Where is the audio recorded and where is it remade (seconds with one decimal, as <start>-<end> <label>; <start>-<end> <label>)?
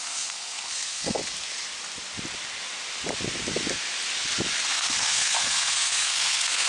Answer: 0.0-1.2 remade; 1.2-4.7 recorded; 4.7-6.7 remade